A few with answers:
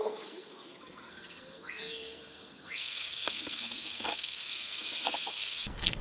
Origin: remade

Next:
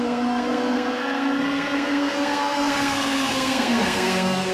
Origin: remade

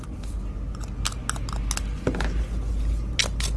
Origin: recorded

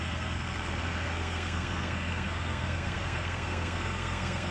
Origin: remade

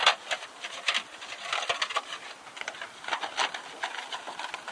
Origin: recorded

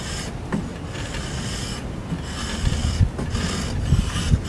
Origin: recorded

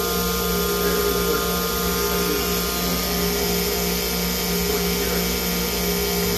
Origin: recorded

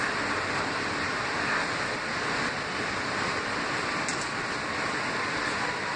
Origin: recorded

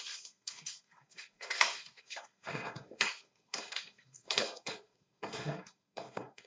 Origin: remade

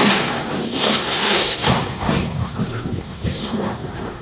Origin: remade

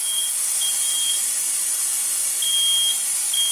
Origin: recorded